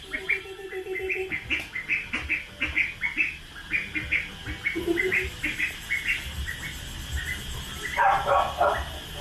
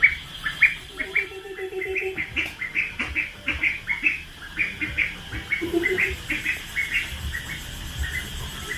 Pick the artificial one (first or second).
second